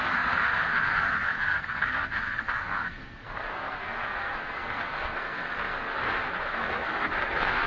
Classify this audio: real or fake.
fake